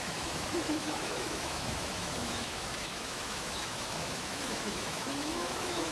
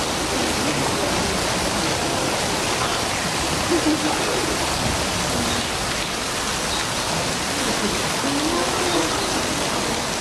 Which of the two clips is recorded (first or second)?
second